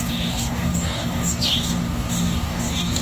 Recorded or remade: remade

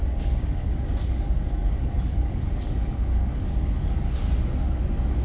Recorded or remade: remade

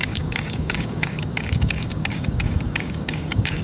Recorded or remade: remade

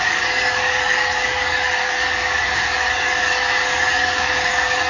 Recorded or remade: remade